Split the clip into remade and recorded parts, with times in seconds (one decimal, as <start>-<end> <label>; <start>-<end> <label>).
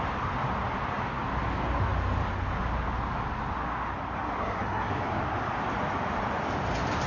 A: 0.0-4.4 recorded; 4.4-4.9 remade; 4.9-7.1 recorded